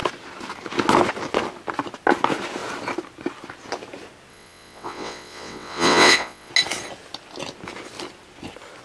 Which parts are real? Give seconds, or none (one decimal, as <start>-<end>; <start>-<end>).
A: 0.0-4.3; 6.5-8.8